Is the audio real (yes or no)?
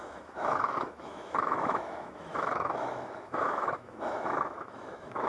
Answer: no